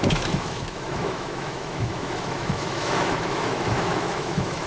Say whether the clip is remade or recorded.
remade